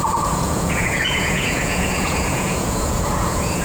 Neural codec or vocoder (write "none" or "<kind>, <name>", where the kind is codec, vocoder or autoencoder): vocoder, Vocos